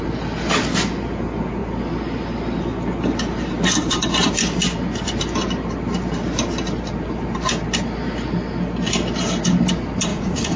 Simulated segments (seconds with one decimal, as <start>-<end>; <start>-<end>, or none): 10.1-10.6